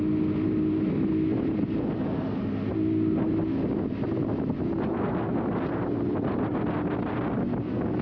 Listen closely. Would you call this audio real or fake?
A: real